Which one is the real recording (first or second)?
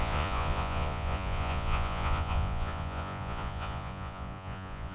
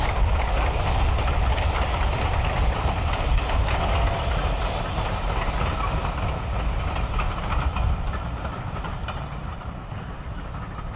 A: second